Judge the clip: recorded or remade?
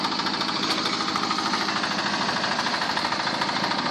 recorded